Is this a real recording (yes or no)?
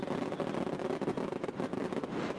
yes